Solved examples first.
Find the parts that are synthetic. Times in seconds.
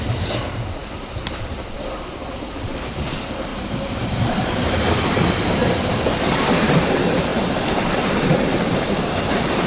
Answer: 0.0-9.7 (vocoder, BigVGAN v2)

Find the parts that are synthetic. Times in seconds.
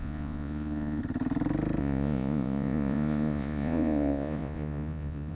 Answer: 0.0-1.0 (vocoder, Vocos); 1.8-5.3